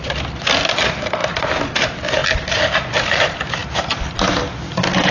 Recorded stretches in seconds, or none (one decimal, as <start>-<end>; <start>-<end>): 0.0-5.1